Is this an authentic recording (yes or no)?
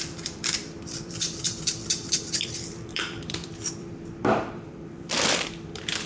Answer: no